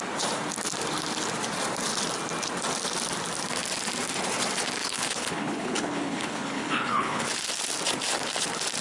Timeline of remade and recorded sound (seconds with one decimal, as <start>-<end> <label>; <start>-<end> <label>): 0.0-4.8 recorded; 4.8-7.3 remade; 7.3-8.8 recorded